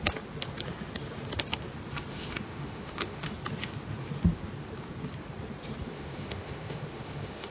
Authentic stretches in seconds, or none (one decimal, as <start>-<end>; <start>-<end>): 0.0-2.1; 3.3-5.9